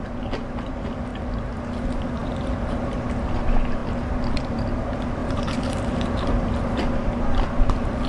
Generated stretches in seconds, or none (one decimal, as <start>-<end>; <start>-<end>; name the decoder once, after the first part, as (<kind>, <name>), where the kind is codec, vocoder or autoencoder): 0.0-1.1 (vocoder, BigVGAN v2); 1.6-8.1